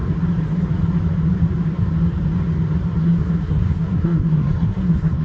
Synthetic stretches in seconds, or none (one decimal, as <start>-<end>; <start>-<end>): 3.0-5.2